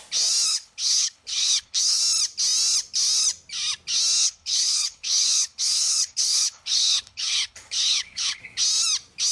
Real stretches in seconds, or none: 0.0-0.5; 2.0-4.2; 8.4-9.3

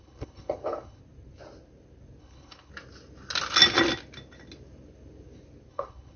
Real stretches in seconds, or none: 1.0-2.2; 2.7-5.7

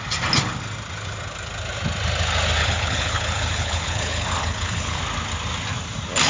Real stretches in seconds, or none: 0.0-2.6; 5.0-6.3

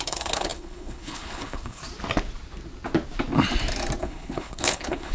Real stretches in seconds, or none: 1.8-4.0

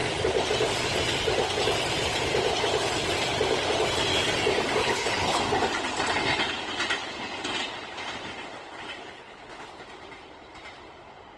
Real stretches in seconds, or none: 0.0-4.8; 5.4-9.0; 9.7-11.4

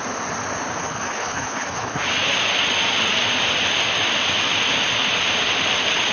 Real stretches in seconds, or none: 0.0-0.8; 2.0-6.1

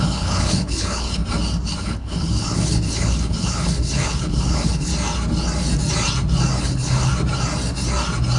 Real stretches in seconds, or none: 1.2-1.8; 4.9-6.6; 7.1-8.4